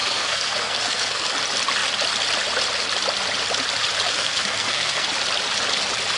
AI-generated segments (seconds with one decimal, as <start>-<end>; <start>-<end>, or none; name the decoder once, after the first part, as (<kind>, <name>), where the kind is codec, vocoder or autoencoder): 0.0-1.3 (codec, SNAC); 4.1-5.1